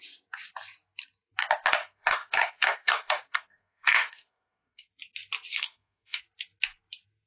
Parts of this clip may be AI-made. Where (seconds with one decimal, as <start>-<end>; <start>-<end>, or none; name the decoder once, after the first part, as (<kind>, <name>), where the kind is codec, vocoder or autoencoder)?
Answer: 1.8-4.9 (codec, SNAC); 5.5-6.2